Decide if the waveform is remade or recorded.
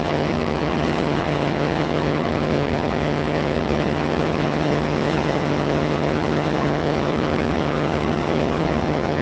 remade